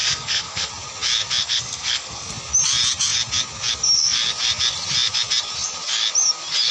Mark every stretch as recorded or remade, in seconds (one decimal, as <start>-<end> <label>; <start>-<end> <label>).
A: 0.0-0.7 remade; 0.7-1.4 recorded; 1.4-2.3 remade; 2.3-6.7 recorded